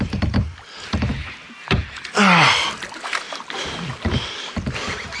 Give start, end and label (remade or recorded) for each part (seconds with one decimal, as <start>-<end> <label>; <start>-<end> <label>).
0.0-5.2 recorded